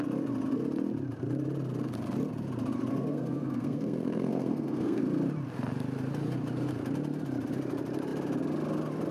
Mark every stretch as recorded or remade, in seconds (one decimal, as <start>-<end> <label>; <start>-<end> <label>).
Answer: 0.0-2.9 recorded; 2.9-5.0 remade; 5.0-9.1 recorded